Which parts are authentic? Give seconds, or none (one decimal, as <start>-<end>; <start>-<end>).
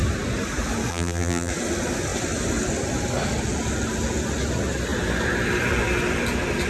0.0-0.9; 1.5-6.7